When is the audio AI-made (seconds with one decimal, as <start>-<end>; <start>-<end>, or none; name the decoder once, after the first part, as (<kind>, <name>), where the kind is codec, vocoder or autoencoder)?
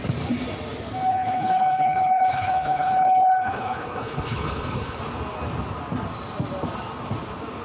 1.1-5.0 (codec, HILCodec)